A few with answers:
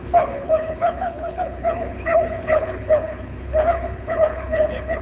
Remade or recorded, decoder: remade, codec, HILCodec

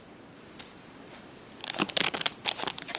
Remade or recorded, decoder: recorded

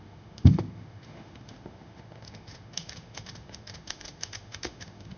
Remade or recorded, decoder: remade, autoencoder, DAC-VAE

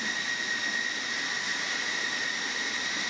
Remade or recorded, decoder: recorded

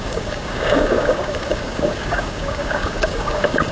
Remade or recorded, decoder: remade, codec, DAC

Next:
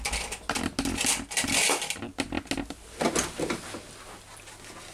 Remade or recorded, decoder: recorded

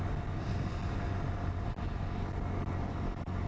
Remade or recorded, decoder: recorded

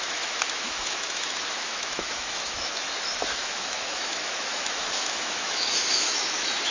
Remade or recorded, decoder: remade, autoencoder, DAC-VAE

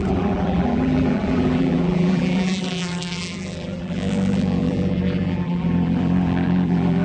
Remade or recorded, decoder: remade, vocoder, BigVGAN v2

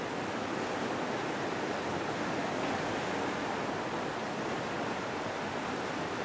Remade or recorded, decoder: recorded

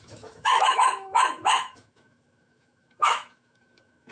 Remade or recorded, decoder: remade, autoencoder, DAC-VAE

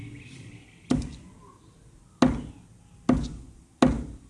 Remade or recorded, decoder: recorded